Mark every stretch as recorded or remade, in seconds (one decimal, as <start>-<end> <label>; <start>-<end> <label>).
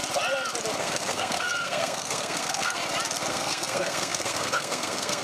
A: 0.0-0.8 recorded; 0.8-2.8 remade; 2.8-3.3 recorded; 3.3-5.2 remade